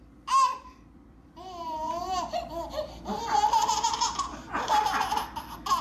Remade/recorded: remade